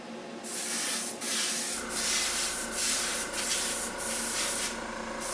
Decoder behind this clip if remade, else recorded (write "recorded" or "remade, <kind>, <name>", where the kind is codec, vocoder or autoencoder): recorded